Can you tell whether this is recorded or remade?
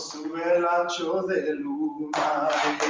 recorded